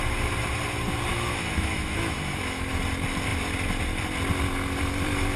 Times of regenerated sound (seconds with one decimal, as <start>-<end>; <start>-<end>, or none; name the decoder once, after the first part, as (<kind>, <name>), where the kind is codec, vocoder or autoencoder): 1.1-2.8 (autoencoder, DAC-VAE)